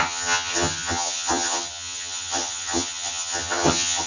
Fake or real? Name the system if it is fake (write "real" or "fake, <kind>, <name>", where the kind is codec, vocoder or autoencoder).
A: fake, vocoder, HiFi-GAN